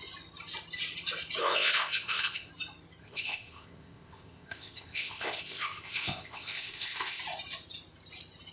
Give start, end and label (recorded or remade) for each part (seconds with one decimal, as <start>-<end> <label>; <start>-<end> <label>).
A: 0.0-1.4 recorded; 1.4-2.5 remade; 2.5-3.0 recorded; 3.0-7.2 remade; 7.2-8.5 recorded